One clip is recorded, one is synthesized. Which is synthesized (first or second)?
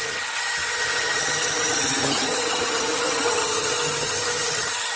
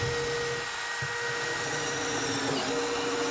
first